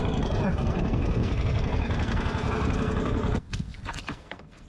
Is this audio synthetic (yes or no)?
yes